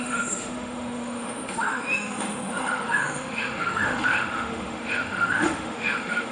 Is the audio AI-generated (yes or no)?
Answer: yes